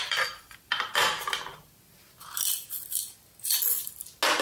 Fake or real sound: real